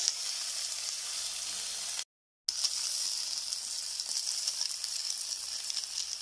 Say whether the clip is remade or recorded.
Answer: recorded